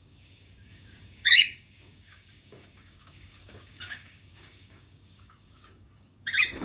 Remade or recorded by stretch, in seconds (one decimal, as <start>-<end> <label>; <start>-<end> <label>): 0.0-6.6 remade